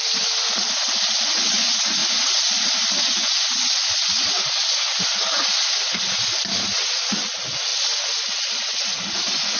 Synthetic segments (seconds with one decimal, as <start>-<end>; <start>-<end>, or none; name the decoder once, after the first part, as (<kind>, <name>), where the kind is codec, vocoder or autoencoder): none